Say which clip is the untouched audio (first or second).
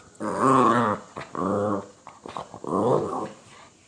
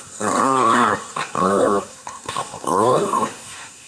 first